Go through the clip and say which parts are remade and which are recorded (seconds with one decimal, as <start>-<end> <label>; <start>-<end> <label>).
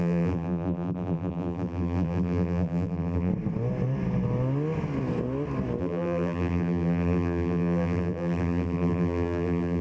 0.0-3.3 remade; 3.3-5.8 recorded; 5.8-9.8 remade